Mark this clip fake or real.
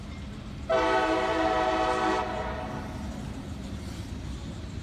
real